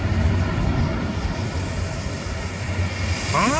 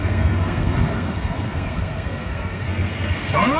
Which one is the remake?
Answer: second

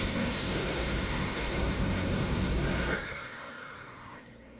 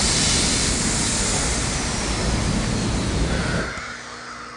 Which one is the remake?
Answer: first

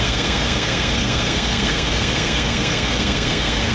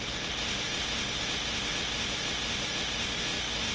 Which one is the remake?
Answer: first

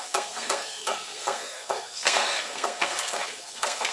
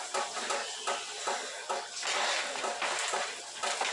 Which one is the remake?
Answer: first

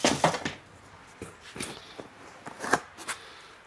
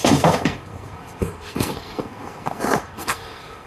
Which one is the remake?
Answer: second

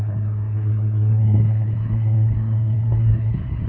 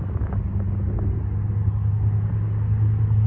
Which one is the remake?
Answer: first